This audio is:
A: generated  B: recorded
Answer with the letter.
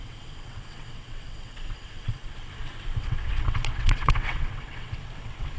A